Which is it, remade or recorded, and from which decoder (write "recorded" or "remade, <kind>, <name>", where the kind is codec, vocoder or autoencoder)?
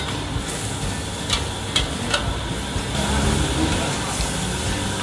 recorded